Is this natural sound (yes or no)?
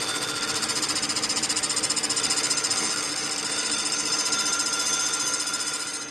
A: yes